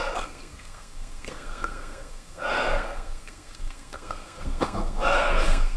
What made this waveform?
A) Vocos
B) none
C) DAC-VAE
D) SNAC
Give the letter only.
D